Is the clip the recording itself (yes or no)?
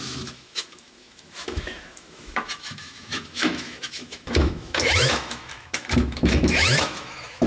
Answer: no